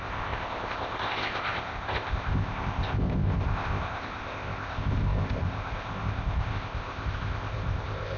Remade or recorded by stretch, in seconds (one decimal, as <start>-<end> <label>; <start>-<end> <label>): 0.0-8.2 remade